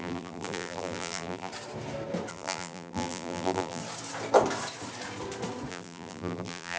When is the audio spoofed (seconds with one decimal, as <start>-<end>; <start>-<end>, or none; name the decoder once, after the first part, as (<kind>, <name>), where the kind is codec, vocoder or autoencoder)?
0.0-1.5 (vocoder, BigVGAN v2); 2.3-3.8; 5.7-6.8

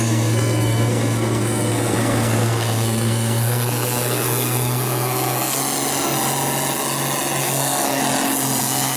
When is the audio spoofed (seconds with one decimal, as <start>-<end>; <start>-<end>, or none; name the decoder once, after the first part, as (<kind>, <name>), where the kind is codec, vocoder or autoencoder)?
0.0-5.6 (codec, SNAC); 7.4-8.0; 8.6-9.0